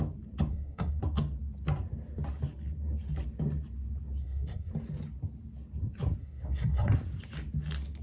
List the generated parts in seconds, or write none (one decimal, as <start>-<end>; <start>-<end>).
0.5-1.0; 4.2-4.7; 6.2-6.9